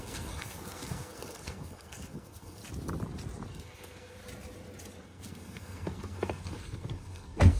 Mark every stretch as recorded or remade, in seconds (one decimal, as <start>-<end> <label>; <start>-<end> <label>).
0.0-2.6 remade; 2.6-3.5 recorded; 3.5-4.2 remade; 4.2-5.0 recorded; 5.0-7.6 remade